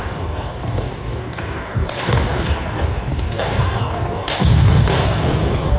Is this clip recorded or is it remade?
remade